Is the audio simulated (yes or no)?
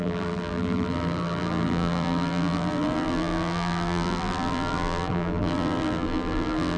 yes